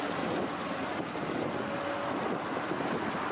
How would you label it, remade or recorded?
recorded